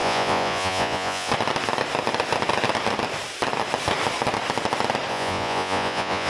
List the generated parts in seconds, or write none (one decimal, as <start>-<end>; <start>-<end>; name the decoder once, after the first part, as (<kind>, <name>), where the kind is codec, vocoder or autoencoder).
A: 0.0-1.3 (vocoder, Vocos); 5.1-6.3